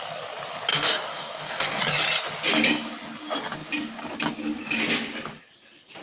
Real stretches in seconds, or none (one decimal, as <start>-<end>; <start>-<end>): 0.0-0.7; 1.8-6.0